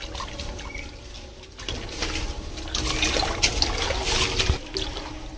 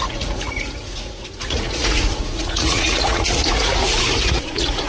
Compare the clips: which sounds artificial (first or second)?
second